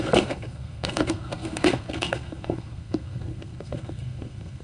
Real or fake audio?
fake